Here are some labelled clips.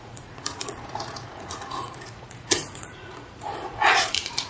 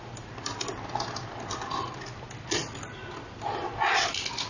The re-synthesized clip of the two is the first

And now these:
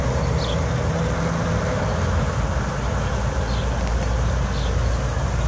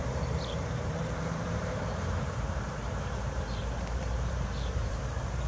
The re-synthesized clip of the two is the second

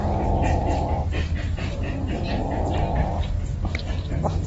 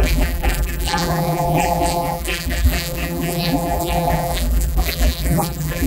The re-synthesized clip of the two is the second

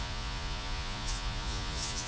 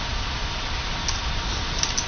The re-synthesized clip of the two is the first